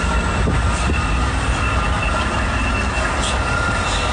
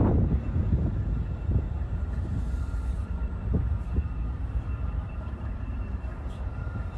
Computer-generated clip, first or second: second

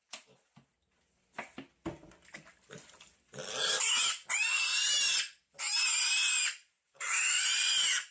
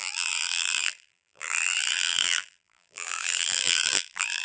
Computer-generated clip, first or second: second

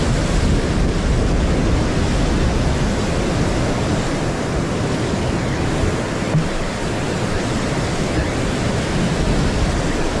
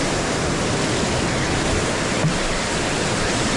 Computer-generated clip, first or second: second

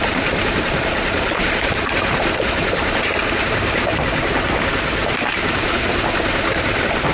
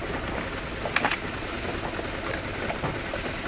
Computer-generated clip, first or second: first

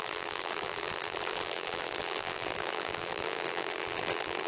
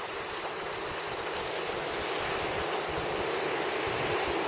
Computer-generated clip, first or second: first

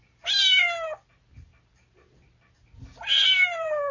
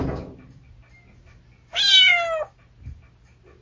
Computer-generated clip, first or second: first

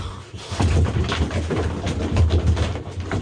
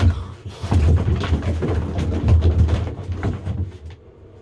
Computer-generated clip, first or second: first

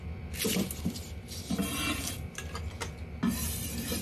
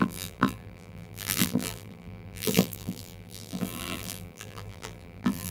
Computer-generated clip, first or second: second